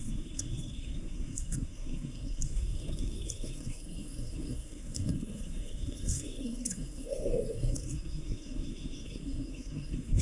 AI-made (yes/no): yes